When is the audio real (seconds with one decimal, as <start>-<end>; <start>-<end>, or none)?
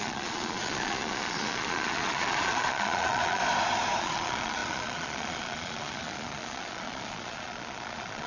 3.4-4.0